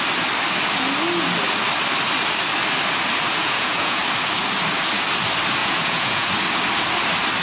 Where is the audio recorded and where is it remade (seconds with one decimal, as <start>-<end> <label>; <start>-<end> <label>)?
0.0-3.4 recorded; 3.4-4.0 remade; 4.0-5.6 recorded; 5.6-6.3 remade; 6.3-7.4 recorded